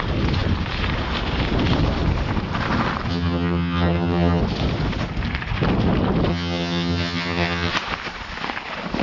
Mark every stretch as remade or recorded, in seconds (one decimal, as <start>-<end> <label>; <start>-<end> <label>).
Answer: 0.0-3.1 recorded; 3.1-4.4 remade; 4.4-6.3 recorded; 6.3-7.7 remade; 7.7-9.0 recorded